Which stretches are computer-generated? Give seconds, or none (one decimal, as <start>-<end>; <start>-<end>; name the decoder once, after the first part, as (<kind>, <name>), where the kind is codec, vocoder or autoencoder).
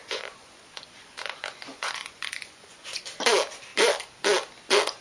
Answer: 0.0-3.0 (vocoder, Vocos)